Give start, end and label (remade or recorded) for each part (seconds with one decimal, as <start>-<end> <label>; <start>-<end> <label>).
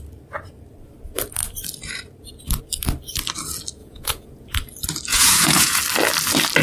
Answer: 0.0-3.8 recorded; 3.8-4.5 remade; 4.5-5.1 recorded; 5.1-5.8 remade; 5.8-6.6 recorded